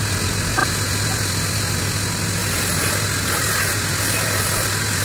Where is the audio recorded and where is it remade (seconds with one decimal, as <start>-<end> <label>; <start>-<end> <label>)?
0.0-5.0 recorded